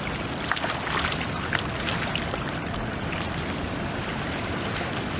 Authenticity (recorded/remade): recorded